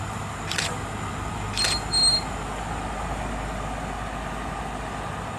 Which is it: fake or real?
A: real